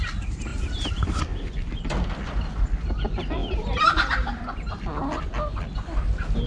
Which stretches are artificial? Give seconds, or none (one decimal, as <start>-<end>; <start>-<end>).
3.4-5.6